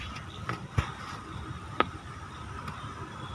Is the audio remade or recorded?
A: recorded